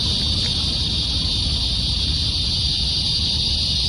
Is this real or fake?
real